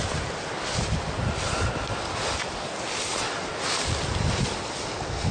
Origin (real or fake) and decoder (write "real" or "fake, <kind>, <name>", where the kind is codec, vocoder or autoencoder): real